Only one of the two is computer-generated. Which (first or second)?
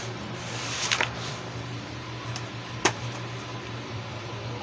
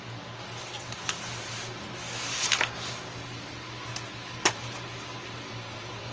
first